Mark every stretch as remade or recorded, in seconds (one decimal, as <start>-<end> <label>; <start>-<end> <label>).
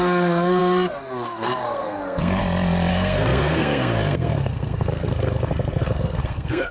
0.0-2.4 remade; 2.4-2.9 recorded; 2.9-6.7 remade